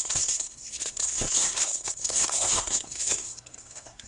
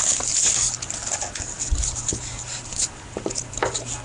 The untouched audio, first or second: second